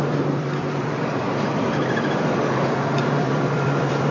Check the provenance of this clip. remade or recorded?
remade